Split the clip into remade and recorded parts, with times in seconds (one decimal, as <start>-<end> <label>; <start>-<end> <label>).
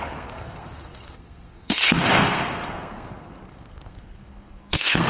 0.0-5.1 remade